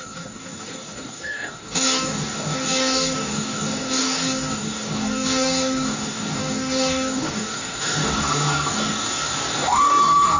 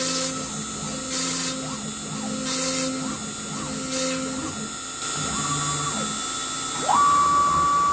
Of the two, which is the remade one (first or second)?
first